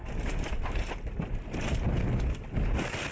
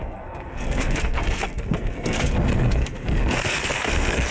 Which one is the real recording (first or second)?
first